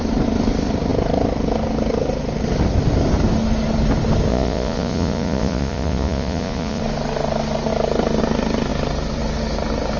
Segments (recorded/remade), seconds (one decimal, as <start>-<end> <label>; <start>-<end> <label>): 0.0-4.3 recorded; 4.3-6.8 remade; 6.8-10.0 recorded